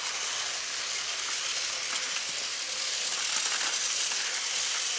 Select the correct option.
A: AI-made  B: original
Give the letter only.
B